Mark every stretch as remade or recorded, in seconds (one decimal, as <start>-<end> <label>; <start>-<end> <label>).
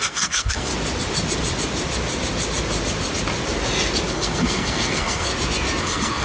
0.0-0.7 remade; 0.7-4.1 recorded; 4.1-5.3 remade; 5.3-5.8 recorded; 5.8-6.2 remade